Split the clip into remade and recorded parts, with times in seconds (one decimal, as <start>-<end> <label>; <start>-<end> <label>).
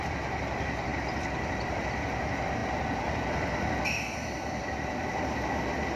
0.0-0.9 recorded; 0.9-2.2 remade; 2.2-2.6 recorded; 2.6-5.6 remade; 5.6-6.0 recorded